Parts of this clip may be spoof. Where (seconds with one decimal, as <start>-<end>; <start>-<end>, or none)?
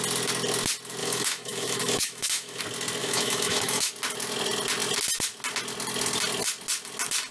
1.0-2.6; 3.0-3.9